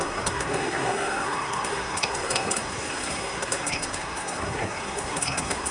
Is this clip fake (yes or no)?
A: yes